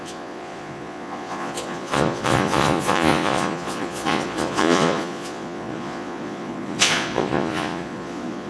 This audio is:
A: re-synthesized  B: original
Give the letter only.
A